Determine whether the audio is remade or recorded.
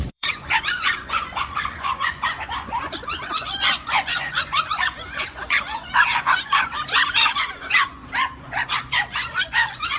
remade